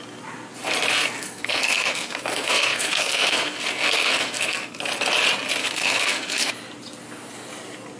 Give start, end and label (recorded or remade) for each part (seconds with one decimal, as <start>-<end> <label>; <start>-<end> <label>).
0.0-0.9 recorded; 0.9-4.8 remade; 4.8-5.6 recorded; 5.6-6.5 remade; 6.5-8.0 recorded